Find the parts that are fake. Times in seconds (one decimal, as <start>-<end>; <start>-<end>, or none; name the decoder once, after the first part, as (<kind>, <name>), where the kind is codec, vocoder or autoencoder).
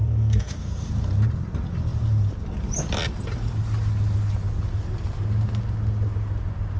0.0-0.9 (codec, SNAC)